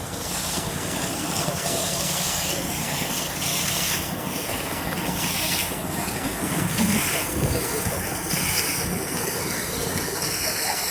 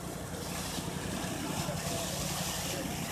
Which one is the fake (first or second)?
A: first